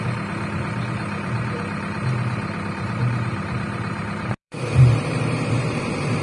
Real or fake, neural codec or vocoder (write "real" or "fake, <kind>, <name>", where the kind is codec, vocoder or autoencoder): fake, vocoder, BigVGAN v2